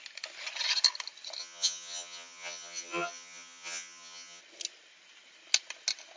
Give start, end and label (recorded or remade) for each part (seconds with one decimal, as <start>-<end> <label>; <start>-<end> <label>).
0.0-1.4 recorded; 1.4-4.4 remade; 4.4-6.2 recorded